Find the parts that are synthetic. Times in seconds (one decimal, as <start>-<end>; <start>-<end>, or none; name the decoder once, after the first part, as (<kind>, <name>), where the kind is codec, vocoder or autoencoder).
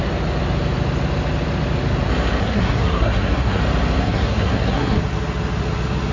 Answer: 2.4-3.6 (codec, SNAC); 4.0-5.0